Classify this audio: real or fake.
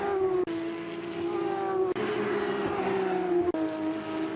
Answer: real